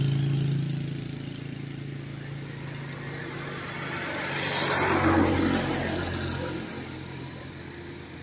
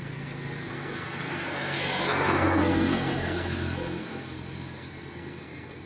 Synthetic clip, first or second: second